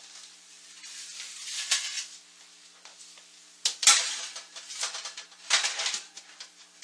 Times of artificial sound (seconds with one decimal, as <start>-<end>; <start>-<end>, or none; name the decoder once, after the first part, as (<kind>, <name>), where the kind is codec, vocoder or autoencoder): none